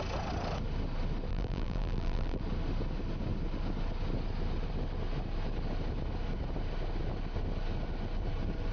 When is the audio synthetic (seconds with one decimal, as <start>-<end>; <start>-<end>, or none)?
1.3-2.4